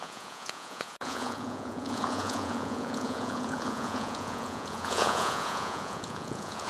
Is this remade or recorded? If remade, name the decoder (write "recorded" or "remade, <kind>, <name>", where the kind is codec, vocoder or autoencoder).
remade, vocoder, Vocos